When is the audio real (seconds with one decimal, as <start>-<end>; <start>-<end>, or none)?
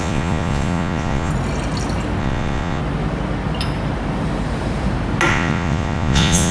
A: 1.3-2.2; 2.8-5.3